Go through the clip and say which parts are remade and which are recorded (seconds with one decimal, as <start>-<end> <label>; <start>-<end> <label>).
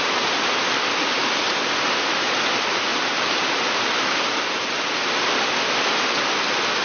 0.0-2.9 recorded; 2.9-4.4 remade; 4.4-6.8 recorded